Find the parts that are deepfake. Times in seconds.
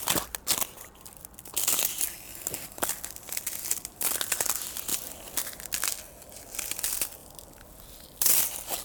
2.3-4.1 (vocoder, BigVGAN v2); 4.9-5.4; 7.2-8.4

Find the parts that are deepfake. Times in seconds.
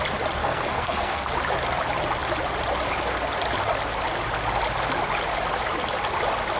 0.4-1.3 (codec, SNAC)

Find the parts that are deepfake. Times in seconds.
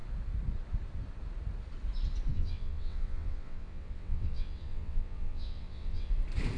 2.3-6.1 (vocoder, WaveNeXt)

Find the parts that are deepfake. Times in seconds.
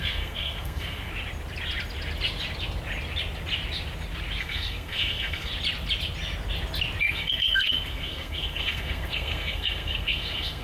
0.0-1.1 (codec, SNAC); 4.4-5.5; 7.0-10.6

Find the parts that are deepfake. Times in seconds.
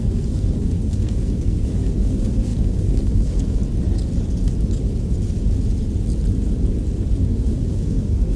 0.0-3.6 (codec, SNAC); 7.3-8.4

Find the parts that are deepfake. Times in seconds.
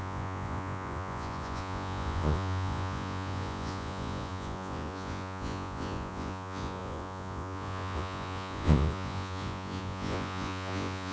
0.0-11.1 (vocoder, Vocos)